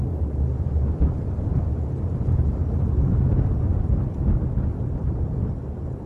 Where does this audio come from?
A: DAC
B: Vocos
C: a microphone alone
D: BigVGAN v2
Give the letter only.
C